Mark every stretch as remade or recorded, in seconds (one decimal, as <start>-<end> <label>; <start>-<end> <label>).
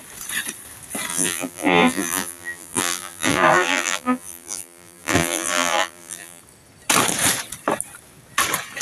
0.0-1.1 recorded; 1.1-6.4 remade; 6.4-8.8 recorded